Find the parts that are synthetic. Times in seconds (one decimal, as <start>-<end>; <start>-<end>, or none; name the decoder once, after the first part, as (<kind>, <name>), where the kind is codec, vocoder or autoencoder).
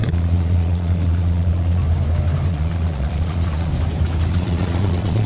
0.0-1.8 (vocoder, Vocos); 2.5-3.7; 4.3-5.3